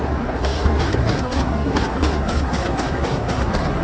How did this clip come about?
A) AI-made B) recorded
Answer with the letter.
A